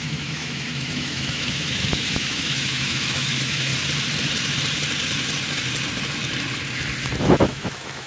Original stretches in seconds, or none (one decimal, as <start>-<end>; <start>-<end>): 3.7-7.2